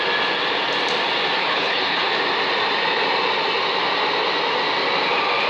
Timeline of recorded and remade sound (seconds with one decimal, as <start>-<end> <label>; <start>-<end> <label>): 0.0-1.4 recorded; 1.4-2.1 remade; 2.1-5.5 recorded